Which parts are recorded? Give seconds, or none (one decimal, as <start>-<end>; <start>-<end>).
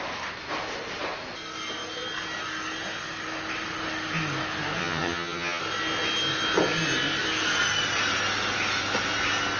0.0-4.8; 5.6-9.6